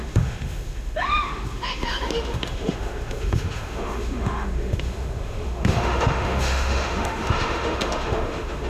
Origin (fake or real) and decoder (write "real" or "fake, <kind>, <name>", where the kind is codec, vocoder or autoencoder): fake, autoencoder, DAC-VAE